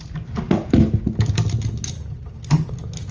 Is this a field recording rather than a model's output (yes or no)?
yes